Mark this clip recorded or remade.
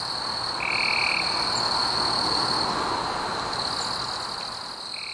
recorded